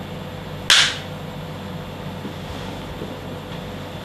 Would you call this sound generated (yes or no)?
no